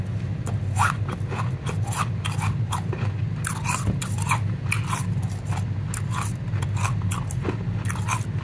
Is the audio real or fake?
real